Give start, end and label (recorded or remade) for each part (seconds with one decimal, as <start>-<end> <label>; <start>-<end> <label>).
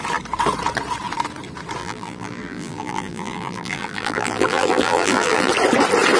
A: 0.0-1.8 recorded; 1.8-5.5 remade; 5.5-6.2 recorded